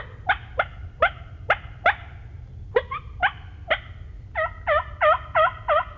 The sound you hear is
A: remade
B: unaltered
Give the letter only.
B